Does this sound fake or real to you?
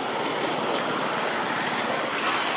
real